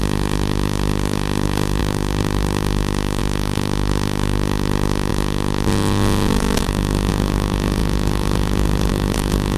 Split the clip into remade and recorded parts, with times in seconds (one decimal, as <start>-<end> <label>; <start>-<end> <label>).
0.0-9.6 remade